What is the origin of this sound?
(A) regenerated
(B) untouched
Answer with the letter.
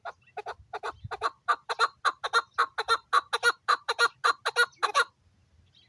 B